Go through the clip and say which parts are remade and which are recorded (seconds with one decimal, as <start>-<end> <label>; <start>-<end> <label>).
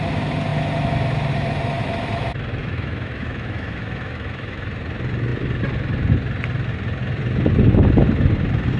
0.0-2.6 recorded; 2.6-4.7 remade; 4.7-8.8 recorded